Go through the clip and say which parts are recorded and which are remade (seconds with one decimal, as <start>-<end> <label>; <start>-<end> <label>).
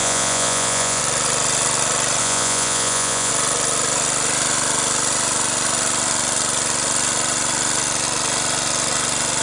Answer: 0.0-1.0 remade; 1.0-2.2 recorded; 2.2-3.3 remade; 3.3-9.4 recorded